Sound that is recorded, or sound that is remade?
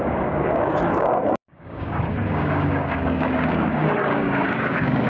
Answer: remade